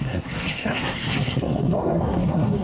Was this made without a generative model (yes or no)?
no